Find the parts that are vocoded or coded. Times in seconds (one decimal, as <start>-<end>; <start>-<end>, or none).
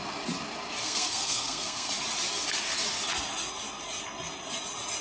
0.8-1.9